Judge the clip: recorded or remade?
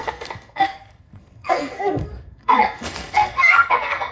remade